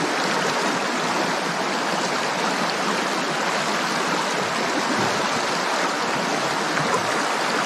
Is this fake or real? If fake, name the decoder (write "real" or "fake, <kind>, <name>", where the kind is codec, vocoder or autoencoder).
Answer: real